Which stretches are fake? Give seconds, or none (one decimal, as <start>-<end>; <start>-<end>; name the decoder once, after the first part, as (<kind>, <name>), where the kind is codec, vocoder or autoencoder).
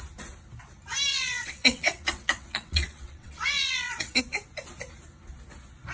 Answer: 1.1-4.2 (vocoder, WaveNeXt)